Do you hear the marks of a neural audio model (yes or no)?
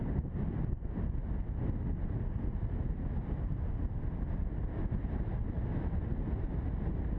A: no